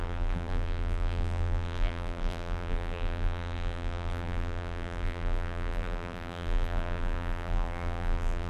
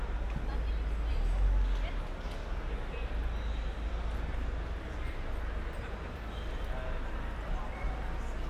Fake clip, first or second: first